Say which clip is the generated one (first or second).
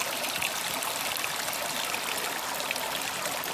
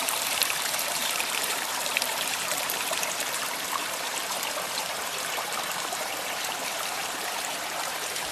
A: second